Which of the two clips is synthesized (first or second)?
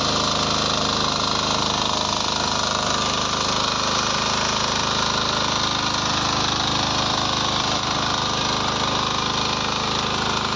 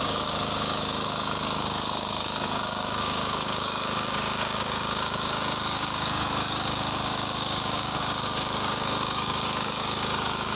second